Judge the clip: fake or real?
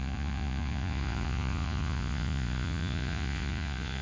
fake